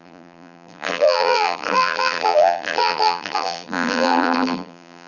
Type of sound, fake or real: fake